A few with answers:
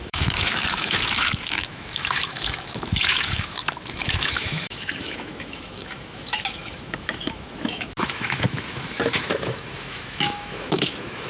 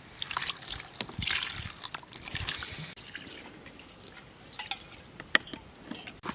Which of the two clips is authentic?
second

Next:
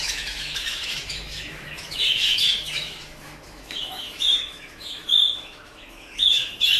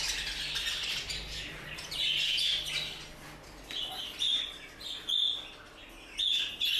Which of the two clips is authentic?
second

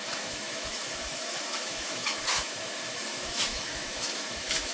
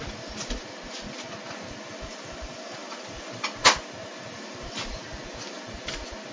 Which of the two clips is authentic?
second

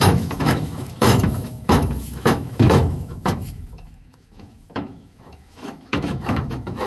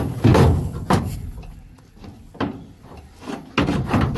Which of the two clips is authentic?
second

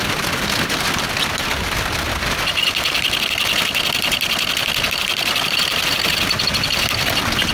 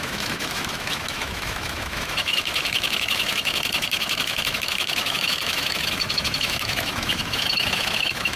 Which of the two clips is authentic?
first